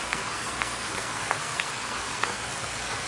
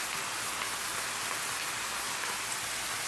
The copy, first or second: first